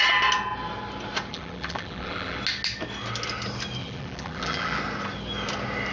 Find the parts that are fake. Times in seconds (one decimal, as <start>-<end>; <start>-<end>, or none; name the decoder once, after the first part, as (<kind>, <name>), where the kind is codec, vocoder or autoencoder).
1.3-2.4 (vocoder, BigVGAN v2); 3.8-4.8